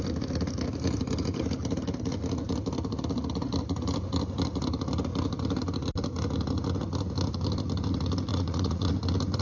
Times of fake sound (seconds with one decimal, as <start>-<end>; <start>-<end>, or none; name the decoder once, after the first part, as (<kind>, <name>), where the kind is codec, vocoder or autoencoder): 8.3-8.9 (vocoder, Vocos)